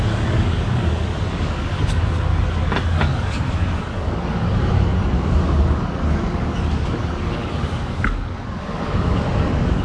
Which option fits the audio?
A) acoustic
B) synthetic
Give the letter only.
B